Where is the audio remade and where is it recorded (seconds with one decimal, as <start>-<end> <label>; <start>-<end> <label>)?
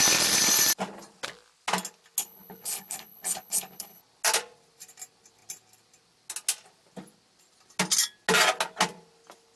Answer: 0.0-2.2 recorded; 2.2-4.0 remade; 4.0-9.6 recorded